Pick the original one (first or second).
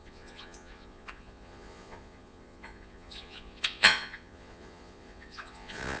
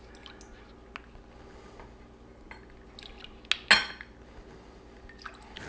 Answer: second